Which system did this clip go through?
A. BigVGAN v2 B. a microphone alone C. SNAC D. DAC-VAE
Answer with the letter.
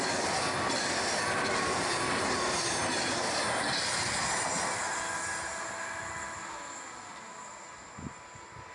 B